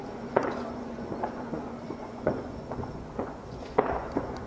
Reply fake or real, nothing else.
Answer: fake